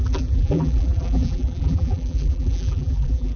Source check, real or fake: fake